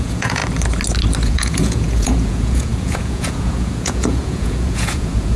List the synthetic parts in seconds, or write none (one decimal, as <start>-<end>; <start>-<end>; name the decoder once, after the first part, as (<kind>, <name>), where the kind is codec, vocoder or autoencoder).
0.0-0.4 (vocoder, Vocos); 1.2-5.4